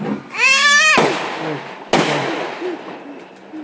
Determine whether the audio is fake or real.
real